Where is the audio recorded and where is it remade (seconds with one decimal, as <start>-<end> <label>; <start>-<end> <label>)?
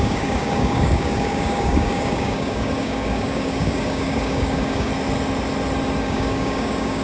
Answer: 0.0-4.9 remade; 4.9-6.0 recorded; 6.0-7.0 remade